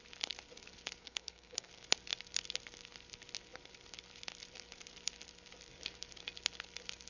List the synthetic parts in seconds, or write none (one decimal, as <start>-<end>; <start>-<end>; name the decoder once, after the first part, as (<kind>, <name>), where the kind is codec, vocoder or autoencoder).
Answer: 1.0-1.7 (codec, SNAC)